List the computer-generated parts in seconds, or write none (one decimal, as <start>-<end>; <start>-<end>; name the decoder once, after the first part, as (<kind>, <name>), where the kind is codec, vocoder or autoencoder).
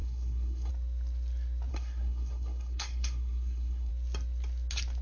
0.0-0.7 (codec, SNAC); 1.7-3.9